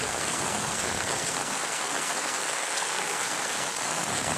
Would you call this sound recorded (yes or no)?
no